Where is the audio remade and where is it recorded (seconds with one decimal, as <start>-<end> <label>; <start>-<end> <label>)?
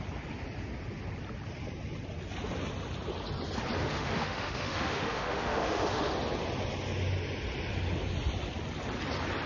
0.0-3.8 recorded; 3.8-6.1 remade; 6.1-9.5 recorded